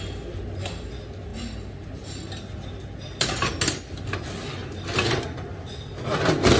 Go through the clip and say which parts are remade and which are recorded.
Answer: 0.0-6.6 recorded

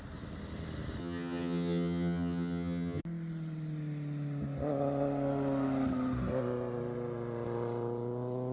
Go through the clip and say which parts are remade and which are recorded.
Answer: 0.0-1.0 recorded; 1.0-3.0 remade; 3.0-8.5 recorded

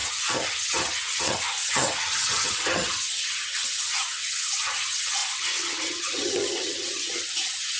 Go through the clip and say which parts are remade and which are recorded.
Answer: 0.0-7.8 remade

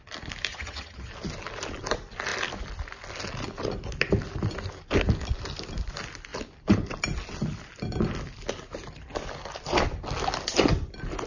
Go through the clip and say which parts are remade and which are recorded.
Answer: 0.0-0.5 recorded; 0.5-1.1 remade; 1.1-11.3 recorded

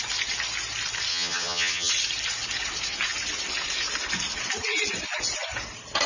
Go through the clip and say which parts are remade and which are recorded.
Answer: 0.0-1.1 recorded; 1.1-1.9 remade; 1.9-6.1 recorded

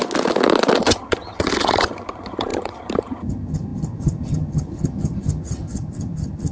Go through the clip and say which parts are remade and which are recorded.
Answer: 0.0-0.8 recorded; 0.8-6.5 remade